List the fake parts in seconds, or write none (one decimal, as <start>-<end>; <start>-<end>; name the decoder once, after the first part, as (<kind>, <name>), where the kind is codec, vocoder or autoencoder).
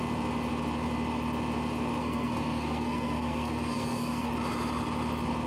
2.0-4.3 (codec, SNAC)